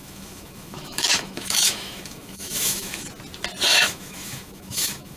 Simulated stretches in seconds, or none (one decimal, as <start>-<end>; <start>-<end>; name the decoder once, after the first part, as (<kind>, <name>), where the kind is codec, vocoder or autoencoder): 0.0-3.1 (autoencoder, DAC-VAE); 3.7-5.2